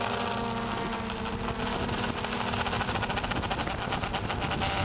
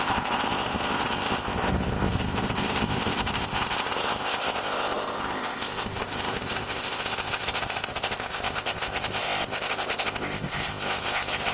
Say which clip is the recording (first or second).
first